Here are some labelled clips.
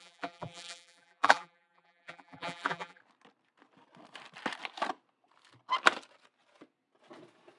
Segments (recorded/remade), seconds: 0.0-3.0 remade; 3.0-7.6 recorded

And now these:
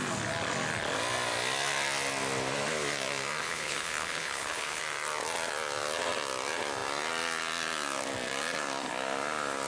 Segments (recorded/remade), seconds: 0.0-3.4 recorded; 3.4-4.8 remade; 4.8-9.7 recorded

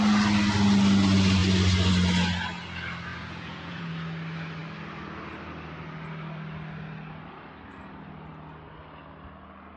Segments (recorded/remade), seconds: 0.0-3.1 recorded; 3.1-3.9 remade; 3.9-9.8 recorded

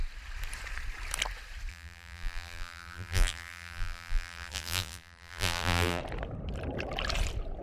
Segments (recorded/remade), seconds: 0.0-1.7 recorded; 1.7-6.0 remade; 6.0-7.6 recorded

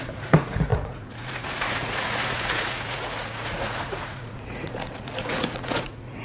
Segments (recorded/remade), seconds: 0.0-6.2 remade

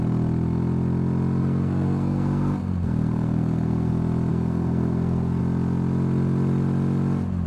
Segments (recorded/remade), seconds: 0.0-1.4 recorded; 1.4-3.9 remade; 3.9-4.3 recorded; 4.3-5.4 remade; 5.4-7.5 recorded

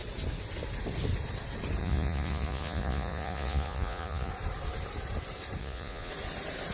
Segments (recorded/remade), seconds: 0.0-1.8 recorded; 1.8-4.3 remade; 4.3-5.6 recorded; 5.6-6.1 remade; 6.1-6.7 recorded